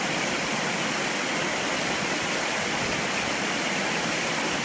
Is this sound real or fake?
real